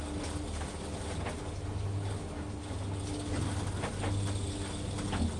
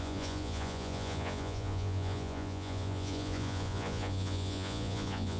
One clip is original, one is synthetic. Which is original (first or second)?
first